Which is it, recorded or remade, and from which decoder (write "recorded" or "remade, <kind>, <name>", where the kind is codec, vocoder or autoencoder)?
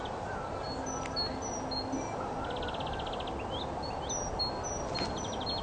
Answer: recorded